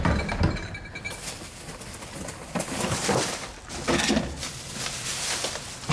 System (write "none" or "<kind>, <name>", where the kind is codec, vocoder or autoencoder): none